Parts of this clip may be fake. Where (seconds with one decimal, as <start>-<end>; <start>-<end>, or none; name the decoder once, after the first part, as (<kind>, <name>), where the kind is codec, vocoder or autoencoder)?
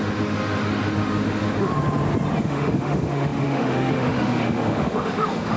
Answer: 0.0-1.7 (autoencoder, DAC-VAE); 2.4-5.6